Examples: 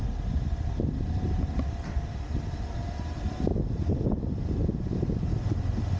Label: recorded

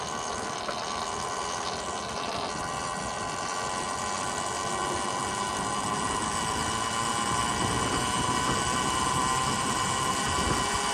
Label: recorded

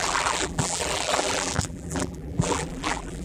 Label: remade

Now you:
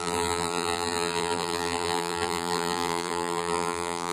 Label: remade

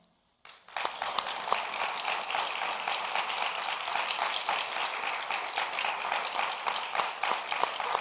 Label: remade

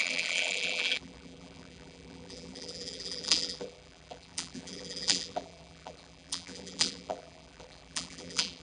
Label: remade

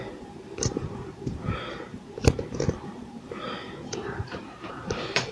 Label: remade